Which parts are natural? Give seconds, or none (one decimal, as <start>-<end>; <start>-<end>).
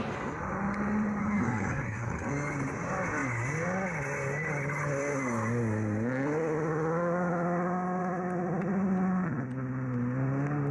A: 0.0-1.2; 2.3-10.7